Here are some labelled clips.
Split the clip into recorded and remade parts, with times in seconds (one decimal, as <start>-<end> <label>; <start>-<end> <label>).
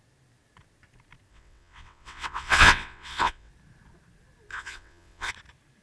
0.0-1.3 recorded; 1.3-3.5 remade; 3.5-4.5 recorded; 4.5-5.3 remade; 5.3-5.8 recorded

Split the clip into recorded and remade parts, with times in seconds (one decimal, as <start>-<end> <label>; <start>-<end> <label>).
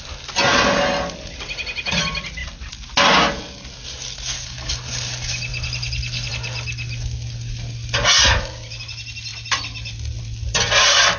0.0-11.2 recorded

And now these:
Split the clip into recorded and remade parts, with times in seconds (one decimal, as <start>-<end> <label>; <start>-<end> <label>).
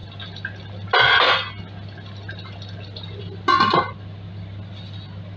0.0-5.4 recorded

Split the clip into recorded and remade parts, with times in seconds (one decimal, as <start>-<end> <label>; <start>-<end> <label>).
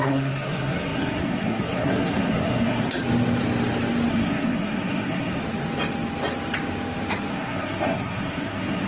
0.0-3.0 remade; 3.0-4.1 recorded; 4.1-5.4 remade; 5.4-7.3 recorded; 7.3-8.9 remade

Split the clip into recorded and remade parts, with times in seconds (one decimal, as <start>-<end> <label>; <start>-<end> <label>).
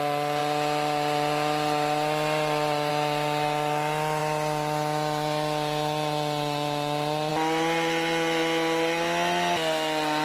0.0-10.2 recorded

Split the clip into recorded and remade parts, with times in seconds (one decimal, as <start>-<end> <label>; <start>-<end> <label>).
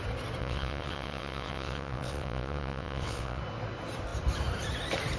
0.0-0.4 recorded; 0.4-3.4 remade; 3.4-5.2 recorded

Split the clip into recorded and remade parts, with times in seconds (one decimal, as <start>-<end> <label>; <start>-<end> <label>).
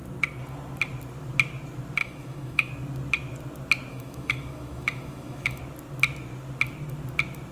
0.0-2.0 recorded; 2.0-2.7 remade; 2.7-3.9 recorded; 3.9-5.6 remade; 5.6-7.5 recorded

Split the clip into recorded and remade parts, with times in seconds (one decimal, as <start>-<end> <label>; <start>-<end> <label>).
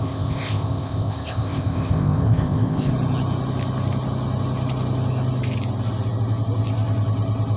0.0-2.9 remade; 2.9-7.6 recorded